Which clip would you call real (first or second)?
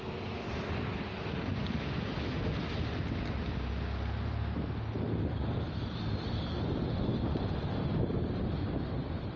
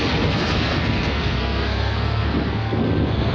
first